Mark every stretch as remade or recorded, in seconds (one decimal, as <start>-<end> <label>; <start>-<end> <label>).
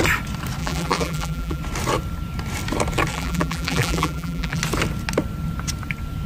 0.0-0.6 recorded; 0.6-1.6 remade; 1.6-3.1 recorded; 3.1-4.6 remade; 4.6-6.3 recorded